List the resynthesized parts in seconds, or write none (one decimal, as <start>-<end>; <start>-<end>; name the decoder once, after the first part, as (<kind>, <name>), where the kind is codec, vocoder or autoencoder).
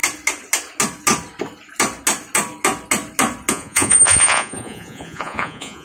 3.5-5.8 (vocoder, Vocos)